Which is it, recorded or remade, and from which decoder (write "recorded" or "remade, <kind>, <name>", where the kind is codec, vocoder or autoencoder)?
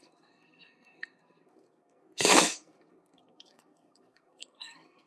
remade, codec, SNAC